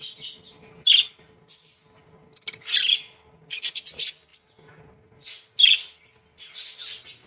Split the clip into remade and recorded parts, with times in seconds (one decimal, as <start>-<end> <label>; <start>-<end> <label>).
0.0-7.3 recorded